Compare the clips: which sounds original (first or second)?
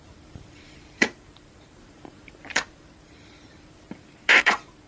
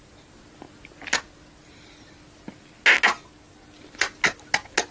second